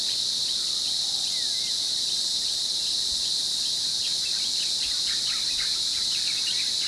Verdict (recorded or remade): recorded